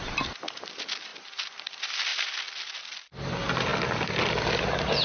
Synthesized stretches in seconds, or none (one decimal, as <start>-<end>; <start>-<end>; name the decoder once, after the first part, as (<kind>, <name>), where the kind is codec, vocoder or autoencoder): none